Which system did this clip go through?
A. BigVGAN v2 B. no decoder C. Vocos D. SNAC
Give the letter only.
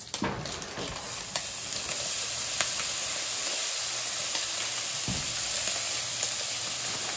B